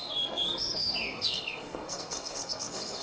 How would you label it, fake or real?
fake